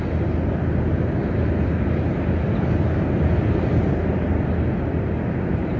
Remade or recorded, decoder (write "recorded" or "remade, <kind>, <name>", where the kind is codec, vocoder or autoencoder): recorded